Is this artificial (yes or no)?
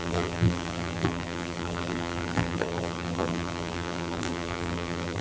yes